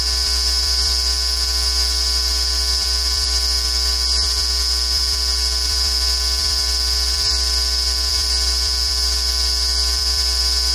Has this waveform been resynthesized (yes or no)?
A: yes